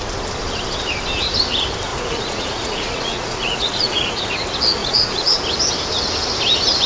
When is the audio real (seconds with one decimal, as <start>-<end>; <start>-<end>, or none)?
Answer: 0.0-1.9; 4.2-4.8; 5.4-6.9